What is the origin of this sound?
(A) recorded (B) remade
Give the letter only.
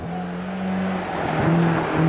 A